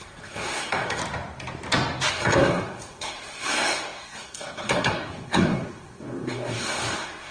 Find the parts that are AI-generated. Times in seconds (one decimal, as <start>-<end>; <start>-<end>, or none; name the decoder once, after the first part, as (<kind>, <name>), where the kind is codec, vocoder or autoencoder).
0.0-1.0 (codec, SNAC); 2.1-7.3